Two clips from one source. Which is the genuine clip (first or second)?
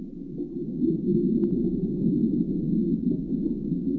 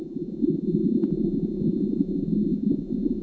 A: first